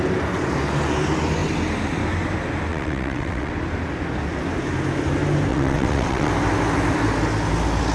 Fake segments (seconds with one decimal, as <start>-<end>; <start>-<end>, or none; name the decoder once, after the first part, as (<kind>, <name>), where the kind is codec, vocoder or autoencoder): 2.7-3.5 (vocoder, WaveNeXt); 5.5-6.3